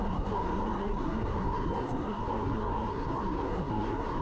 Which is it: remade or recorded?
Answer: remade